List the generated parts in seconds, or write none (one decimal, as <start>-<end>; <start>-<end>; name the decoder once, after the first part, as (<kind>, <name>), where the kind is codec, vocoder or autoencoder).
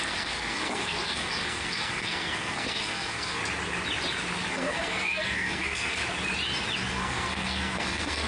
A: 0.0-3.4 (codec, SNAC); 4.5-6.0; 6.9-8.3